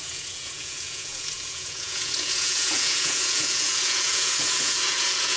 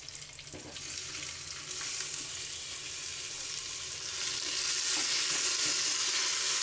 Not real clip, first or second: first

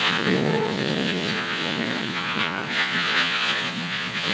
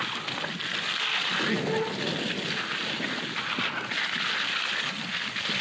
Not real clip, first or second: first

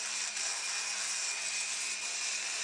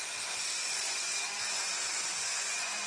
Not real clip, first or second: second